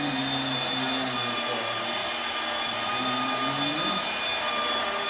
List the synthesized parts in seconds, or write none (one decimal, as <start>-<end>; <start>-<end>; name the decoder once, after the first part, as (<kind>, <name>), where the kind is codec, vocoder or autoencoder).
2.0-2.6 (vocoder, BigVGAN v2); 3.7-4.6